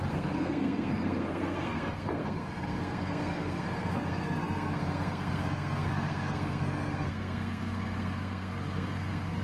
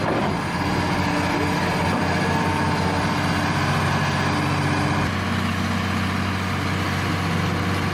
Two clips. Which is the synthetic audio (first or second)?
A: first